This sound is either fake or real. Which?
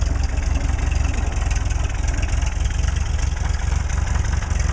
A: real